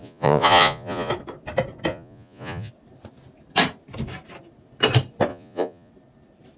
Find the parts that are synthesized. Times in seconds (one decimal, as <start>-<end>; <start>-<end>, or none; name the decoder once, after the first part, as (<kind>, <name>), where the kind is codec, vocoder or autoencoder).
0.0-1.1 (vocoder, Vocos); 1.9-2.7; 5.3-5.9